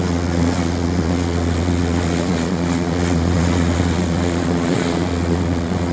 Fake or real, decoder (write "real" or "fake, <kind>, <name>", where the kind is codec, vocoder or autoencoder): fake, vocoder, Vocos